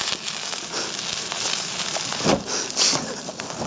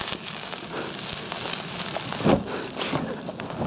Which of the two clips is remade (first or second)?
second